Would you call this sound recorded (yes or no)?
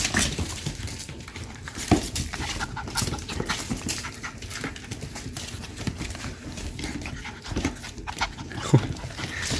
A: no